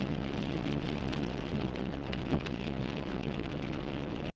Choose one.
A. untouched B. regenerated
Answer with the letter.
B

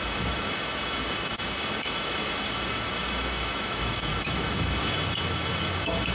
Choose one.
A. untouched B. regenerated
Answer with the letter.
B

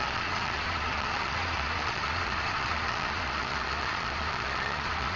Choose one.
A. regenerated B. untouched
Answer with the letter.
A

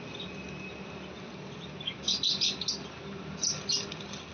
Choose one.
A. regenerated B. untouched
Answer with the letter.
B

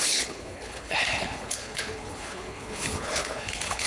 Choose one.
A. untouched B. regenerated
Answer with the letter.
B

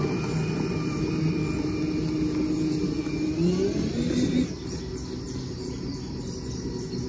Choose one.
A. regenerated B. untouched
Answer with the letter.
B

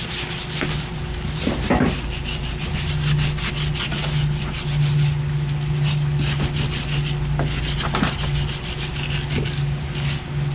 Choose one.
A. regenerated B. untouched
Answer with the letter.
B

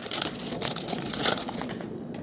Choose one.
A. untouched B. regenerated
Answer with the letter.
B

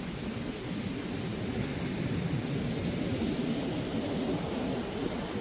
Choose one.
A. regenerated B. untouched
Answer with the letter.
B